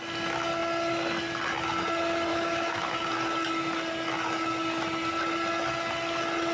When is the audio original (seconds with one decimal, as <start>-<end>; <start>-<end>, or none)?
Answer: 0.0-2.3; 2.9-6.5